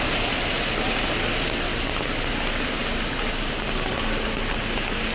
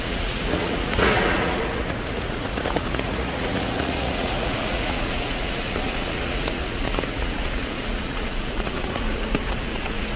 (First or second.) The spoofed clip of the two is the second